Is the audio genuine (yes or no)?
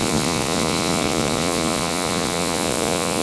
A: no